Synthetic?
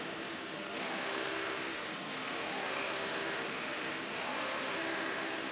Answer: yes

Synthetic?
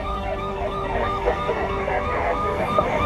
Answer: yes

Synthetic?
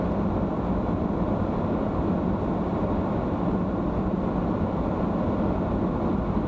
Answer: no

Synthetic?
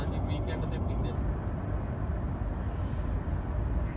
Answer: no